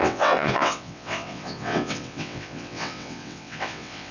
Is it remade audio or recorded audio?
remade